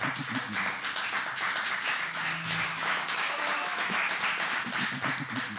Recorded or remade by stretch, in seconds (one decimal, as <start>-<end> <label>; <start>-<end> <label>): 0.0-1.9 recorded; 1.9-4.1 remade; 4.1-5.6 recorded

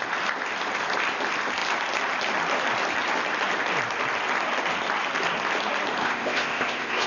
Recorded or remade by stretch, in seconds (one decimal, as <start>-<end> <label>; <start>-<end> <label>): 0.0-6.0 recorded; 6.0-7.1 remade

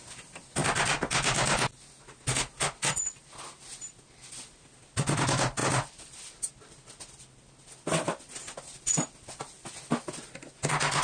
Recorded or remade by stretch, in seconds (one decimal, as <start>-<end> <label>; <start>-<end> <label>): 0.0-11.0 recorded